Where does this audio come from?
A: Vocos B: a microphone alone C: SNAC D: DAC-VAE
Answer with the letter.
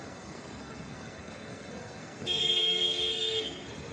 C